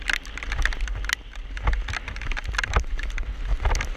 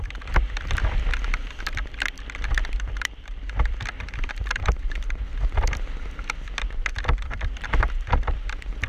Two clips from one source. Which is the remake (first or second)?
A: second